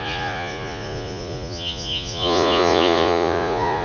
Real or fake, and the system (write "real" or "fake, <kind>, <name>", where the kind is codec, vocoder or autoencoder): fake, vocoder, Vocos